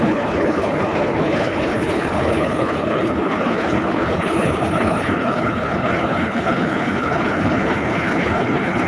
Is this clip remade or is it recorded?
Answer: remade